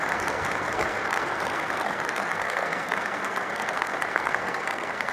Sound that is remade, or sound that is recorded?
remade